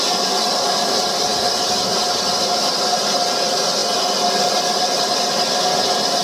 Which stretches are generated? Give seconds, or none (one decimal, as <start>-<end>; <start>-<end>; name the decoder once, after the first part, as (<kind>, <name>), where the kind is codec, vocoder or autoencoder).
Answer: none